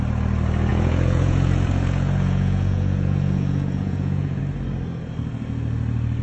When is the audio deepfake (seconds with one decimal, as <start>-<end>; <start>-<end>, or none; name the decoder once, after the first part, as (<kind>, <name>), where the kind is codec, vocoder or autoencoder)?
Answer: 0.7-4.4 (vocoder, Vocos)